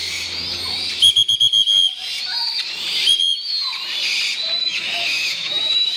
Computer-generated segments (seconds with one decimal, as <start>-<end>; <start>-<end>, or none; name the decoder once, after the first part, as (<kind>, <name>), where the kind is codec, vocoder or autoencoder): 4.6-6.0 (autoencoder, DAC-VAE)